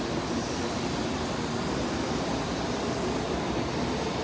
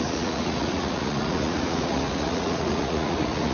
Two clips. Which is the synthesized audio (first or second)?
second